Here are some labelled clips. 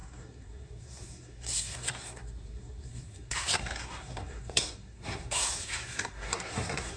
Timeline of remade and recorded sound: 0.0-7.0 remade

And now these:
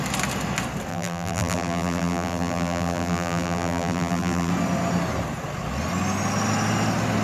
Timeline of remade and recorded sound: 0.0-0.9 recorded; 0.9-4.5 remade; 4.5-7.2 recorded